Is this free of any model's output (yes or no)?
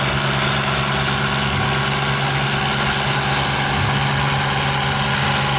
yes